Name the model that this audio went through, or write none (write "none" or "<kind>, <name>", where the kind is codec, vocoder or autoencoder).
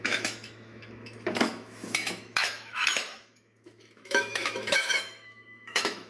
autoencoder, DAC-VAE